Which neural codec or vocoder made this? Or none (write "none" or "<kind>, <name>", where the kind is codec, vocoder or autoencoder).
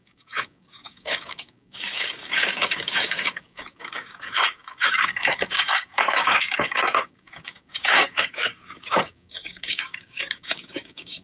codec, DAC